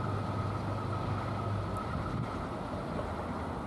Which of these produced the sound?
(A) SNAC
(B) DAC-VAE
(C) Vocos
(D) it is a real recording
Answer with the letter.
D